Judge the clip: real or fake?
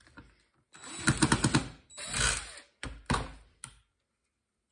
real